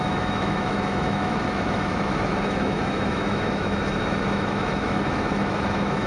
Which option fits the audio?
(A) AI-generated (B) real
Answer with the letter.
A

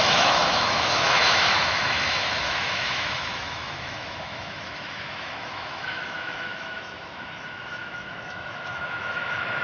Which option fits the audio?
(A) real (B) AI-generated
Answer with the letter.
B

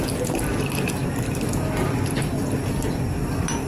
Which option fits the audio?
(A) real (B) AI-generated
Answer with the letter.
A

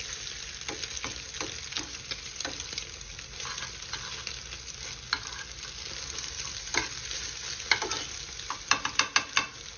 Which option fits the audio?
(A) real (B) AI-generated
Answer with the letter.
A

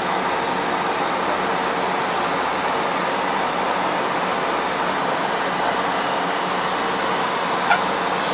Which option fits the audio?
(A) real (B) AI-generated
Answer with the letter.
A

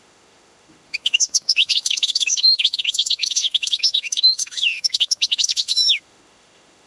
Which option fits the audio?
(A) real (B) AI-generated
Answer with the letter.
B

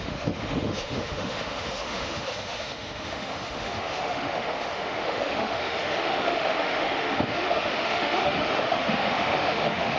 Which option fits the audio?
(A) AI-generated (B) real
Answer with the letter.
A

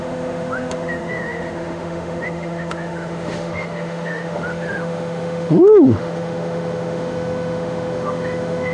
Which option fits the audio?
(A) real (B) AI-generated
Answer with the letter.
B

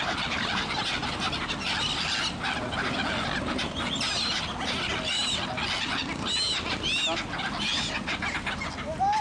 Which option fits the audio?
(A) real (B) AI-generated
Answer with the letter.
A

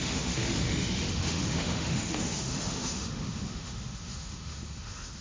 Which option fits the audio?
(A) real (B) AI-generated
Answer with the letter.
B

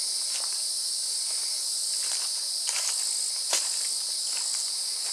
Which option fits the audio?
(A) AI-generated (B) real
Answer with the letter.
B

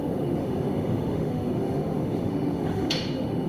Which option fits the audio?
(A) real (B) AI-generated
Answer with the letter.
B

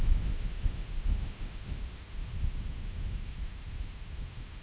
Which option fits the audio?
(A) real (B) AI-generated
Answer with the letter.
B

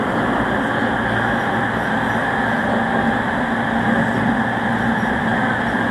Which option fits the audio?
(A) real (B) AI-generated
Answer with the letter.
A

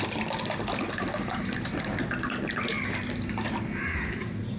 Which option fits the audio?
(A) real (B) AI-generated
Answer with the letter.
A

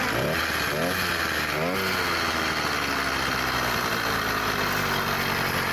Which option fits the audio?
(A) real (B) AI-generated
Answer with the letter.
A